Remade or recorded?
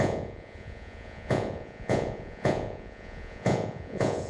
remade